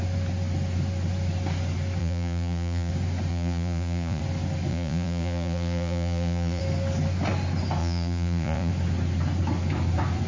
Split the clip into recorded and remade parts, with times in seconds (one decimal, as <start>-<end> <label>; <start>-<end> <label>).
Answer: 0.0-2.0 recorded; 2.0-2.9 remade; 2.9-3.3 recorded; 3.3-4.2 remade; 4.2-4.7 recorded; 4.7-6.6 remade; 6.6-7.8 recorded; 7.8-8.7 remade; 8.7-10.3 recorded